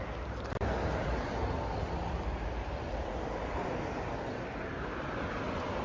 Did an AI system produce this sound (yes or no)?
no